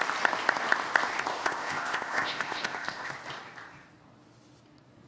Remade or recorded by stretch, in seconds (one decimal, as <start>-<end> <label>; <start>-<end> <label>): 0.0-1.3 recorded; 1.3-3.1 remade; 3.1-5.1 recorded